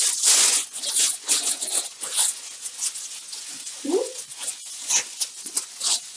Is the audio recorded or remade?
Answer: remade